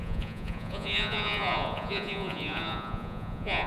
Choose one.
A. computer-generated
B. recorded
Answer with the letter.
A